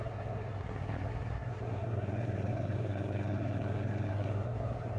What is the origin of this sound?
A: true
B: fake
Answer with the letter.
B